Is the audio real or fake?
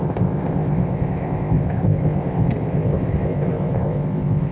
fake